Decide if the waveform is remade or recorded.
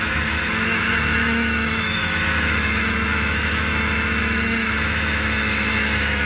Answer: remade